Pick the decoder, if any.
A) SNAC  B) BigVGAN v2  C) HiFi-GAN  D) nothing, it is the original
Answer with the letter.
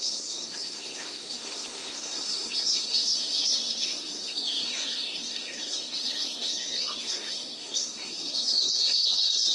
A